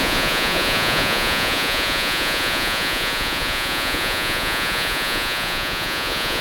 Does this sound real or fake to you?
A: fake